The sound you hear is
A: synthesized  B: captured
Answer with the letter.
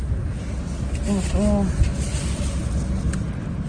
B